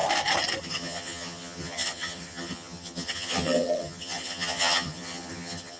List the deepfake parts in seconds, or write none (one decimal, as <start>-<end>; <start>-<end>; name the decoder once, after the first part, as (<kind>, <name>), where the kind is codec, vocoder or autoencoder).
0.6-5.8 (vocoder, HiFi-GAN)